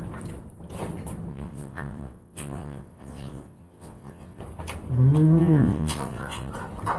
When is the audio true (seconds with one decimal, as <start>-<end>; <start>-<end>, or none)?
0.0-1.3; 4.4-5.4; 6.5-7.0